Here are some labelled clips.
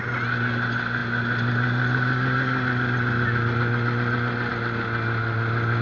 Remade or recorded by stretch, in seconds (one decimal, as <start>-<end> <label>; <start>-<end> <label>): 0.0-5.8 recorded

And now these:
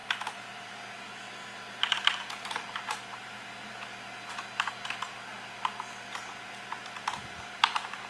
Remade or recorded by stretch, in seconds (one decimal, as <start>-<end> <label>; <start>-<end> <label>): 0.0-8.1 recorded

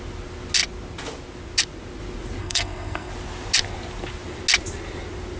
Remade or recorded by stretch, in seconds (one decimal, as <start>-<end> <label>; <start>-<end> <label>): 0.0-2.4 recorded; 2.4-3.1 remade; 3.1-5.4 recorded

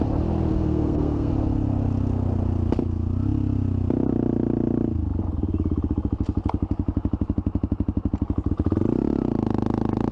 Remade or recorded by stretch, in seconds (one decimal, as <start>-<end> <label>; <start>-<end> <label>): 0.0-0.5 recorded; 0.5-1.3 remade; 1.3-10.1 recorded

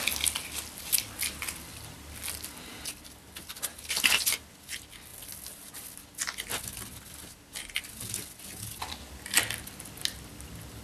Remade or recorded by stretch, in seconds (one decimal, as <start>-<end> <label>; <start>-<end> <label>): 0.0-10.8 recorded

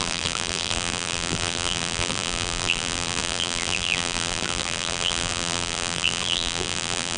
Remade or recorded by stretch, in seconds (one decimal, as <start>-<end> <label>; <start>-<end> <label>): 0.0-7.2 remade

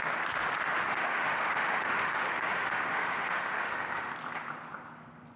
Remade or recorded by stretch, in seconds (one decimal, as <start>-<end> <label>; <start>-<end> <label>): 0.0-0.9 recorded; 0.9-4.1 remade; 4.1-5.4 recorded

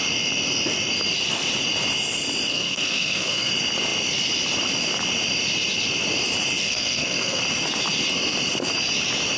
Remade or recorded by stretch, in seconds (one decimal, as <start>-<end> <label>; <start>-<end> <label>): 0.0-2.5 recorded; 2.5-3.5 remade; 3.5-6.6 recorded; 6.6-7.4 remade; 7.4-9.4 recorded